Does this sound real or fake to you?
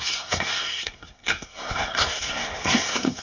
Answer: fake